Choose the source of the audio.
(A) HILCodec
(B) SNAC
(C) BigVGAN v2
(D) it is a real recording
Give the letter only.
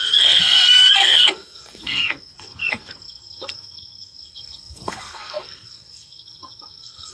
B